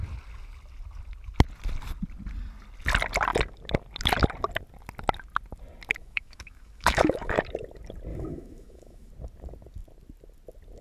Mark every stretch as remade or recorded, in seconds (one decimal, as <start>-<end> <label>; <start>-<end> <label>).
0.0-6.0 recorded; 6.0-7.4 remade; 7.4-8.1 recorded; 8.1-9.1 remade; 9.1-10.8 recorded